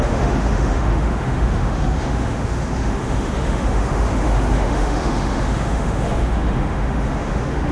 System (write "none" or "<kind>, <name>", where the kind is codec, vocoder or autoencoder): autoencoder, DAC-VAE